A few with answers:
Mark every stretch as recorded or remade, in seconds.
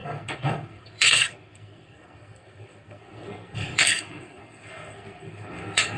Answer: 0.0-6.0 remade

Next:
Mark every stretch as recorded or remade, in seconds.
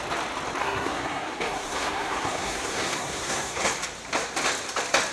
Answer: 0.0-0.6 recorded; 0.6-3.7 remade; 3.7-5.1 recorded